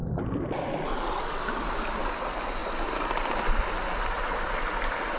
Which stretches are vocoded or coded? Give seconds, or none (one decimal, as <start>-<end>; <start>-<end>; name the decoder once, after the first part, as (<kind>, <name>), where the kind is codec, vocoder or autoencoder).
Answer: none